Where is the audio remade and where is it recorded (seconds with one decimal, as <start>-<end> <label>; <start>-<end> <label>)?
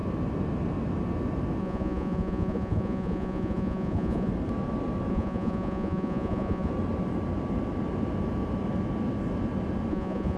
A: 0.0-1.6 recorded; 1.6-4.3 remade; 4.3-5.1 recorded; 5.1-6.7 remade; 6.7-9.9 recorded; 9.9-10.4 remade